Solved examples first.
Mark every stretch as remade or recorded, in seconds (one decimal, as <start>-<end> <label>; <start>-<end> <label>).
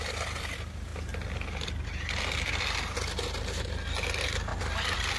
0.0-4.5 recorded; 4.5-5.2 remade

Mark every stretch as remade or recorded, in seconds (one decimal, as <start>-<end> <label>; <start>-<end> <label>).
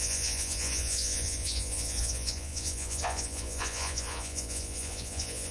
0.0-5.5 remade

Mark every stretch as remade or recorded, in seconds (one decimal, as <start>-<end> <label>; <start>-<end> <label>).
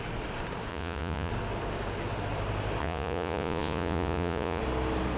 0.0-0.7 recorded; 0.7-1.3 remade; 1.3-2.8 recorded; 2.8-4.6 remade; 4.6-5.2 recorded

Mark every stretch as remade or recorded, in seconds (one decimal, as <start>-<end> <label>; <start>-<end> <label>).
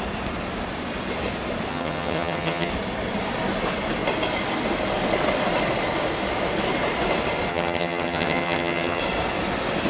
0.0-1.7 recorded; 1.7-2.7 remade; 2.7-7.5 recorded; 7.5-9.0 remade; 9.0-9.9 recorded